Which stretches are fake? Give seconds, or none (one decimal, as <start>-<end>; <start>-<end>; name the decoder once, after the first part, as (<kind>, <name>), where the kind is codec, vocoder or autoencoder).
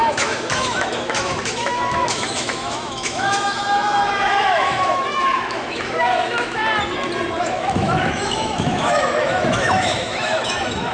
0.0-6.6 (autoencoder, DAC-VAE); 7.4-10.9